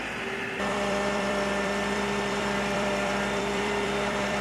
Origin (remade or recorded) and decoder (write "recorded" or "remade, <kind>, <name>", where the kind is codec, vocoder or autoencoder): remade, vocoder, BigVGAN v2